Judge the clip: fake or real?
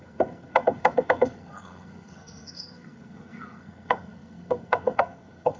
fake